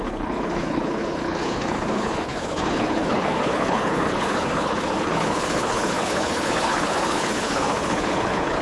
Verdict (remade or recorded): remade